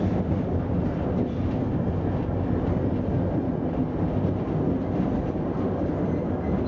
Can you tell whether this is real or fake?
real